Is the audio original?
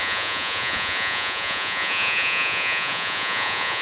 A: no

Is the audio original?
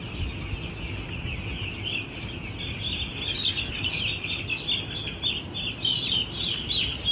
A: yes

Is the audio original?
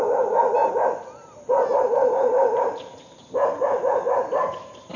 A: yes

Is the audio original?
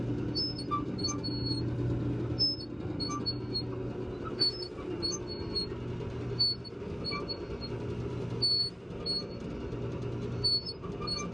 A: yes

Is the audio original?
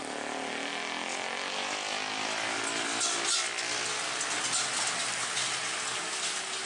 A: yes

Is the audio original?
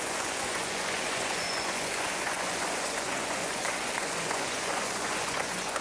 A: no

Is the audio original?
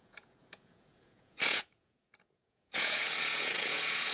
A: no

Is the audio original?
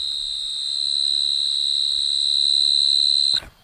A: yes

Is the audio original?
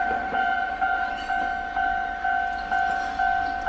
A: yes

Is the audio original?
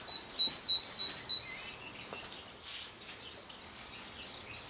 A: yes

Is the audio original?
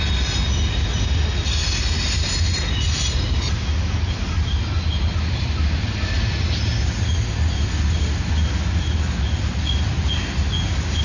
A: yes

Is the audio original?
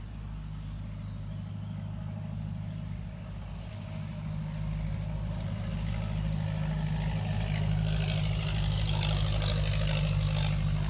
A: yes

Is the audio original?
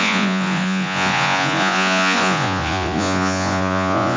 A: no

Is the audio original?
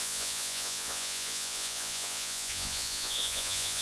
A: no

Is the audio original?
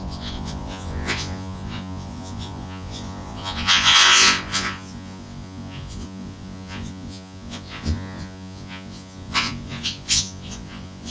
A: no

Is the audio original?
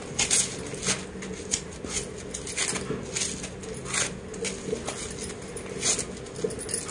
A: yes